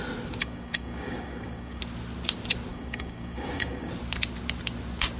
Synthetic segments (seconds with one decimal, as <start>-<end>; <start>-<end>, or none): 0.4-1.8; 2.7-3.9